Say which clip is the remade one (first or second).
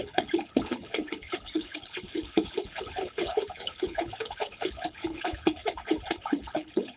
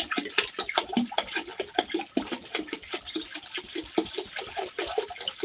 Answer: first